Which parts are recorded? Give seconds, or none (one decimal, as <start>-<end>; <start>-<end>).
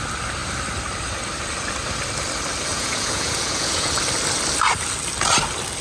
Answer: 0.0-2.7; 3.9-5.8